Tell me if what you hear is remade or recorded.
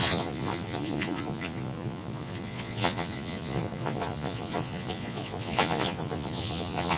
remade